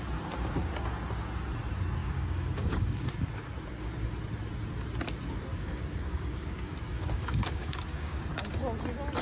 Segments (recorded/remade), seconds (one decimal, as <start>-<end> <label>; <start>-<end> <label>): 0.0-2.0 recorded; 2.0-3.3 remade; 3.3-5.5 recorded; 5.5-8.5 remade; 8.5-9.2 recorded